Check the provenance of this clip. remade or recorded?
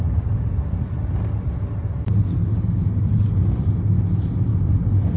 recorded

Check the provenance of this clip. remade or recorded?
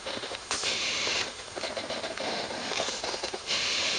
remade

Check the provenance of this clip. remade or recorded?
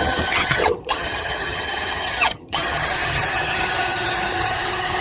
remade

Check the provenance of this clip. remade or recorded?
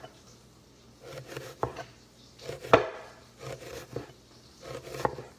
recorded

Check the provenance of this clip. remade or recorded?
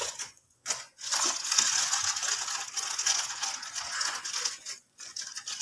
remade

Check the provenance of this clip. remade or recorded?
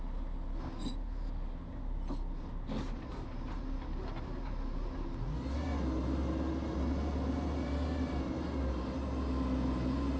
recorded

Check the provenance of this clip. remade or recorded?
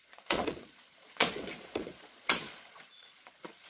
remade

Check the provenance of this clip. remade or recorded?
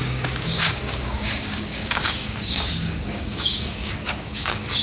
remade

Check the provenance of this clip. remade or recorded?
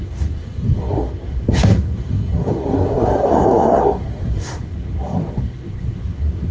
remade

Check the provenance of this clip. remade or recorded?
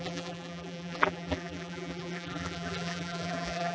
remade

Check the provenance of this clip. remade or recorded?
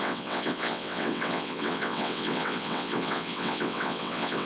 remade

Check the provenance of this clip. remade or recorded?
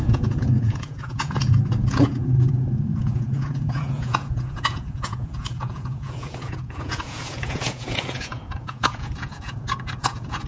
remade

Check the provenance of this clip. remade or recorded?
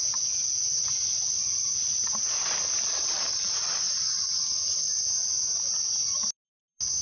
recorded